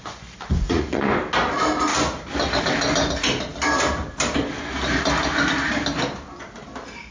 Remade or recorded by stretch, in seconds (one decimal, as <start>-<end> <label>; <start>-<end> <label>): 0.0-1.2 remade; 1.2-7.1 recorded